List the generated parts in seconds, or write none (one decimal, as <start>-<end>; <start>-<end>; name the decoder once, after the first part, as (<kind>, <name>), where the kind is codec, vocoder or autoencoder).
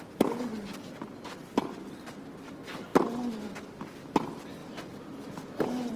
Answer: none